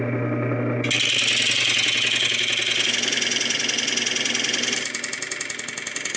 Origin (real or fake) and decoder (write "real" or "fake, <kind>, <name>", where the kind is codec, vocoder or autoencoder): real